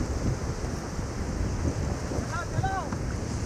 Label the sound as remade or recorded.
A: recorded